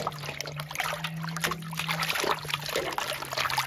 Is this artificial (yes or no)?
no